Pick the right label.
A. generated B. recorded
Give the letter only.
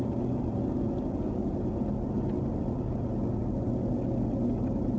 B